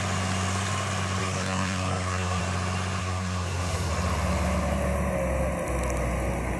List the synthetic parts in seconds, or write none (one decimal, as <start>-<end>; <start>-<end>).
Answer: 1.2-2.4; 3.0-3.9